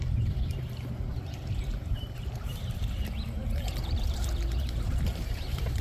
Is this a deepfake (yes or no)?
yes